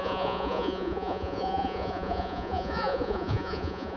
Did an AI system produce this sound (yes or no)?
yes